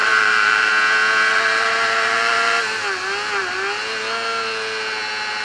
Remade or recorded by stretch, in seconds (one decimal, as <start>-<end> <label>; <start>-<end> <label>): 0.0-0.7 remade; 0.7-1.3 recorded; 1.3-2.6 remade; 2.6-5.4 recorded